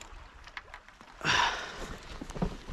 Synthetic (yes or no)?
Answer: no